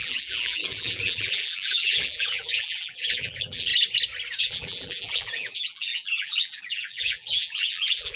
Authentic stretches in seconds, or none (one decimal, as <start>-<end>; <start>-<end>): 3.7-4.4